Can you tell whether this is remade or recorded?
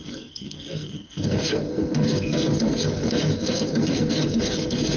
remade